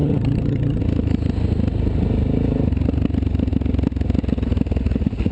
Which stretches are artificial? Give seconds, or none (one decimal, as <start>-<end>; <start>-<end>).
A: 0.0-0.8